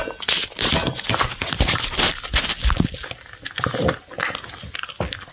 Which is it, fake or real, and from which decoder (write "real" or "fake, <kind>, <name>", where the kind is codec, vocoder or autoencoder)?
real